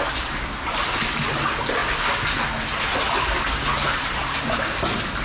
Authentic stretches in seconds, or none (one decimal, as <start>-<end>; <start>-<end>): 0.0-5.2